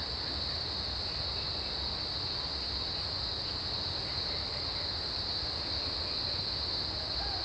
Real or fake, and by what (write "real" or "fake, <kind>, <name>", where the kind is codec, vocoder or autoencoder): real